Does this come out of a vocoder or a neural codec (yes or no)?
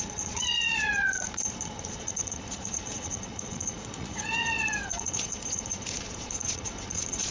yes